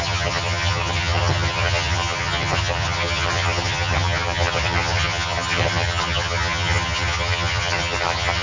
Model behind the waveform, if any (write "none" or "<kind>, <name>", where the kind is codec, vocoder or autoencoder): vocoder, HiFi-GAN